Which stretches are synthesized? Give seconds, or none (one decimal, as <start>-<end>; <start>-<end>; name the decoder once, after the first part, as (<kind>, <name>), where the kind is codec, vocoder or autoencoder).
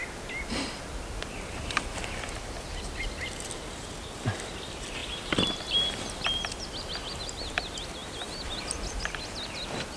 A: none